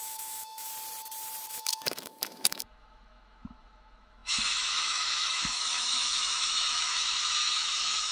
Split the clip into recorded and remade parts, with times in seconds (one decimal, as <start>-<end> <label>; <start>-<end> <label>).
0.0-0.7 remade; 0.7-1.5 recorded; 1.5-8.1 remade